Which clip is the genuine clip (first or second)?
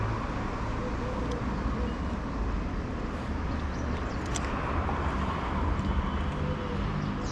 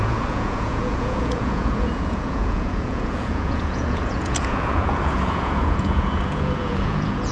first